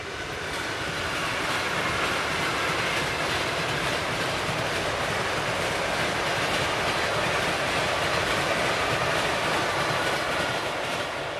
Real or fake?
real